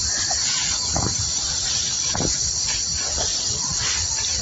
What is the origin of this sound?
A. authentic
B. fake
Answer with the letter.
A